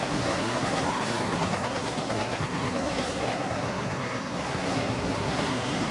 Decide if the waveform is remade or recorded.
remade